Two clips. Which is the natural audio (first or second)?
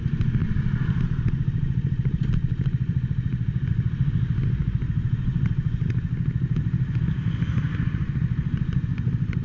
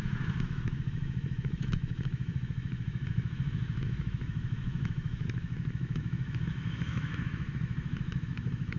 first